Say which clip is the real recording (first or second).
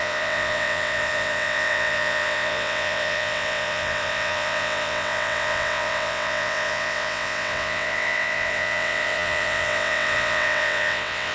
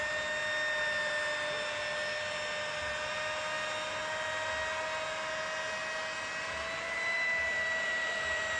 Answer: second